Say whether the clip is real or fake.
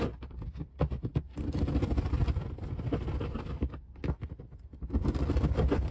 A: real